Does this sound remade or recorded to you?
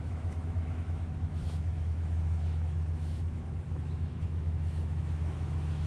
remade